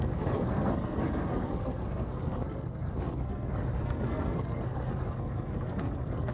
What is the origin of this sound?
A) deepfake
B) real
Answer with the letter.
A